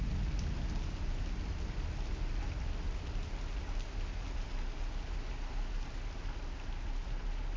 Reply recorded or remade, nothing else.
recorded